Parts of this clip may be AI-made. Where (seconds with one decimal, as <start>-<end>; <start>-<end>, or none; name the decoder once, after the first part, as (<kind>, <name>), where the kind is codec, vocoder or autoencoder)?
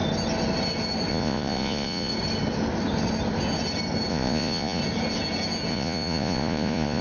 1.1-2.1 (vocoder, Vocos); 4.1-4.8; 5.7-7.0